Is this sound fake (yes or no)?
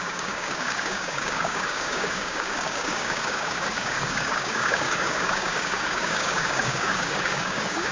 yes